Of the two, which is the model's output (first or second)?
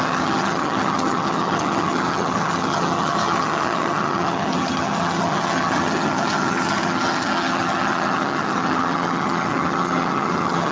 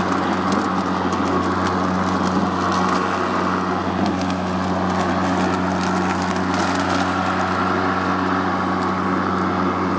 first